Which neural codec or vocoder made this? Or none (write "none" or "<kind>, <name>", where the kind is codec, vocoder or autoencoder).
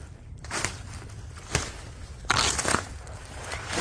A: none